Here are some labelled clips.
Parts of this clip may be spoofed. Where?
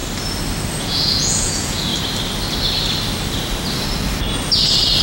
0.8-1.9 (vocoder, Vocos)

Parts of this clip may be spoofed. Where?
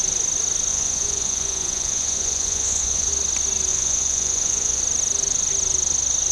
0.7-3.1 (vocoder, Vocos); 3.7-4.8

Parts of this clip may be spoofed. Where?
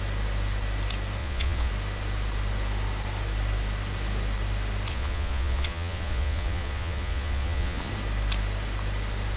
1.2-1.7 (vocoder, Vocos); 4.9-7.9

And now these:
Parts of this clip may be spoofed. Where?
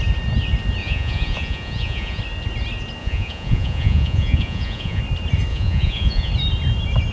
0.8-2.2 (vocoder, Vocos); 3.0-5.0; 5.5-6.3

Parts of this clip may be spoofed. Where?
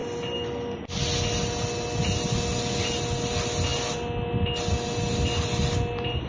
none